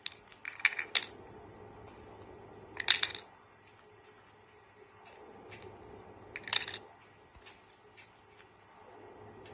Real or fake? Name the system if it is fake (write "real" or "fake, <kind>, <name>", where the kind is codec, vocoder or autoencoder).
real